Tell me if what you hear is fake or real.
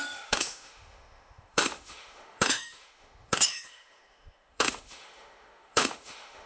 fake